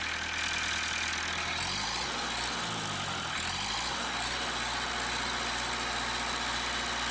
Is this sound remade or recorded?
recorded